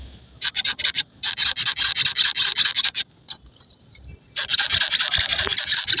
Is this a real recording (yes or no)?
yes